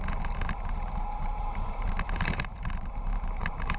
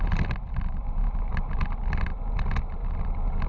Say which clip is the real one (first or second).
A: second